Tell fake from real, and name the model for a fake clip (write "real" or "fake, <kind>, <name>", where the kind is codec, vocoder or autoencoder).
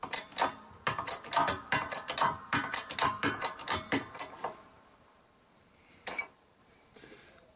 fake, vocoder, BigVGAN v2